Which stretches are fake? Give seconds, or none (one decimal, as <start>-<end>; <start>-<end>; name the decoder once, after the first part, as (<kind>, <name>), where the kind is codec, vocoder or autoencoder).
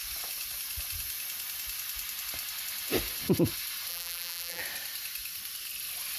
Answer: 3.9-4.6 (vocoder, BigVGAN v2)